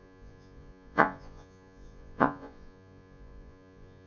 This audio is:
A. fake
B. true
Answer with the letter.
A